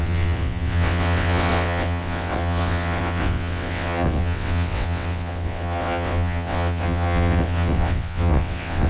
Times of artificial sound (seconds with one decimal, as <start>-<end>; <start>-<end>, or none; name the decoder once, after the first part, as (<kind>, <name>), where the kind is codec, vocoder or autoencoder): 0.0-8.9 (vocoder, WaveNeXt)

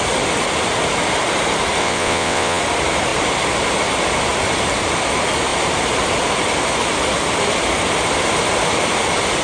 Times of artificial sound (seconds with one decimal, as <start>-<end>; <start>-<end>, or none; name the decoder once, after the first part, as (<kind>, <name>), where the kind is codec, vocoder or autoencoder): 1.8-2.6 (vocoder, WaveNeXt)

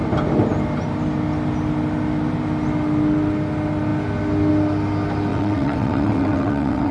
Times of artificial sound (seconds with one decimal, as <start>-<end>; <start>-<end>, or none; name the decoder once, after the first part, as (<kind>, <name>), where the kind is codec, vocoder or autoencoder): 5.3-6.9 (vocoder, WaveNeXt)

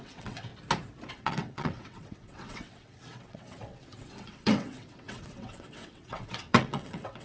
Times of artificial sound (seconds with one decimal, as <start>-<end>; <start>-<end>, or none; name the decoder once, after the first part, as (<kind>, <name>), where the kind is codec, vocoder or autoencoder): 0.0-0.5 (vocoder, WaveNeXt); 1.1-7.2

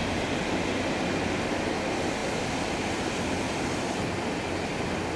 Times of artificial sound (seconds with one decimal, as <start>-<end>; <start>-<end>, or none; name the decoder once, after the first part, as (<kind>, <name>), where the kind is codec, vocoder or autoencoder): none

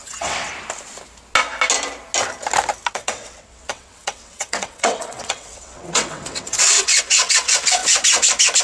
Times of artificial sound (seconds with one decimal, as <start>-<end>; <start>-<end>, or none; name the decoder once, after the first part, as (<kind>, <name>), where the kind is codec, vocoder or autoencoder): 0.0-0.5 (vocoder, WaveNeXt); 2.9-7.8

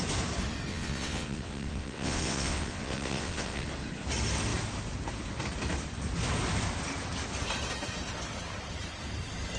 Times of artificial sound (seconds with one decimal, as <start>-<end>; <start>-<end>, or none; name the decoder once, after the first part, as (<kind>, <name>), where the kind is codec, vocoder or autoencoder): 0.7-3.7 (vocoder, WaveNeXt)